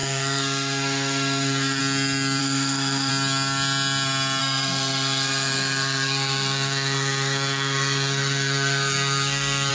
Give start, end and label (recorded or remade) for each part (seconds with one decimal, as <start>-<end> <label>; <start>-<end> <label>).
0.0-1.8 remade; 1.8-2.4 recorded; 2.4-3.1 remade; 3.1-4.4 recorded; 4.4-9.7 remade